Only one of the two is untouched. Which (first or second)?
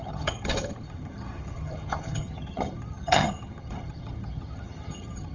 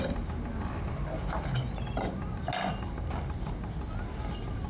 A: second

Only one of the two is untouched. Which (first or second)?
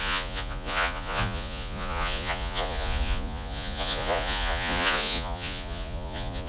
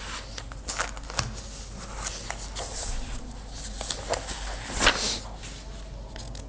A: second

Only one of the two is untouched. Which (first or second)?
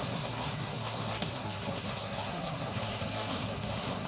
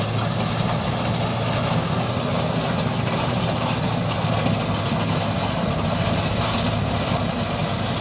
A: second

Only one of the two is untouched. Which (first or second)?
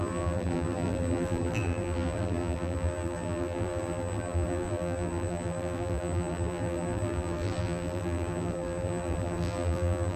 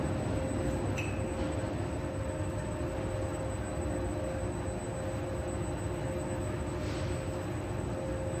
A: second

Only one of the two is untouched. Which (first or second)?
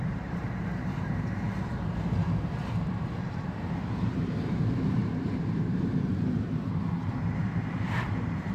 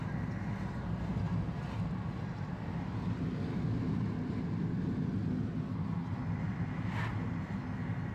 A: second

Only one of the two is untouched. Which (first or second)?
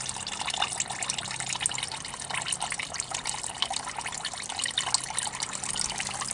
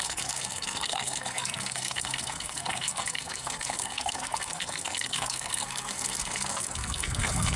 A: first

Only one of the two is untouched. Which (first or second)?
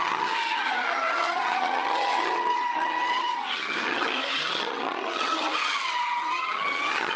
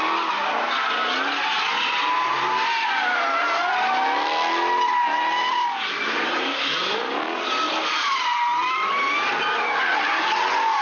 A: second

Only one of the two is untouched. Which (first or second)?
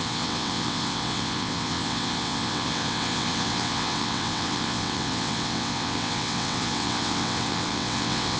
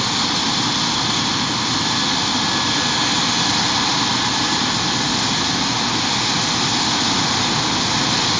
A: second